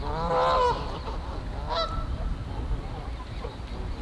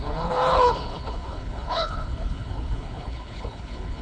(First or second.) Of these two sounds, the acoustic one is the first